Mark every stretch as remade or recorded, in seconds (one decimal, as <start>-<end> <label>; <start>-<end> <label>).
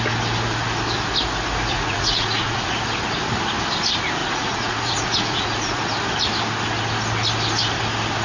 0.0-1.7 recorded; 1.7-2.7 remade; 2.7-4.2 recorded; 4.2-5.8 remade; 5.8-8.2 recorded